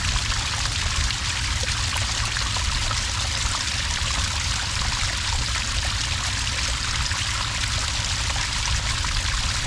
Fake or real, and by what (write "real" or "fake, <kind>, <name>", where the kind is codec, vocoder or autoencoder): real